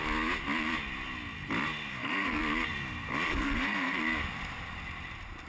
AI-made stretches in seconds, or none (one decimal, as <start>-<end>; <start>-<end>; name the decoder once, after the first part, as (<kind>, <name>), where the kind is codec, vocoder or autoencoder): 1.9-2.4 (codec, SNAC); 3.3-4.0